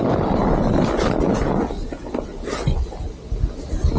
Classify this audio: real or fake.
real